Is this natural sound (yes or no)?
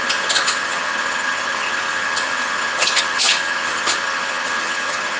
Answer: no